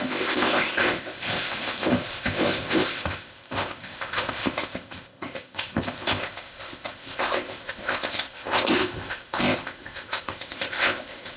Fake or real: fake